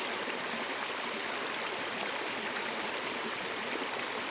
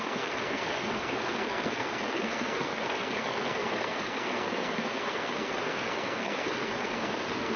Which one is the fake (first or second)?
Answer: second